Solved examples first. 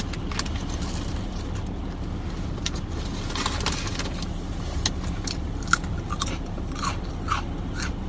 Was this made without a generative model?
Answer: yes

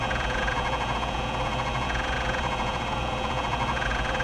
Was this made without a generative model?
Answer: no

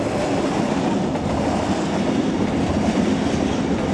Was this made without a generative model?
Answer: yes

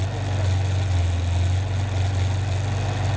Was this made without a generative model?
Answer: yes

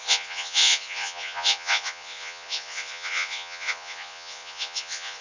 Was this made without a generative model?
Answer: no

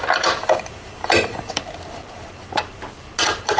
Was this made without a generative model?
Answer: yes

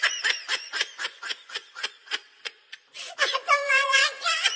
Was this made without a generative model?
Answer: no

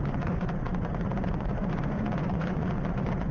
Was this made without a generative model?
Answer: no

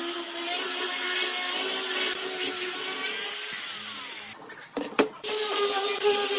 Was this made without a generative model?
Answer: yes